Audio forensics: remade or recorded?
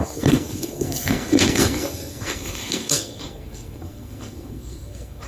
remade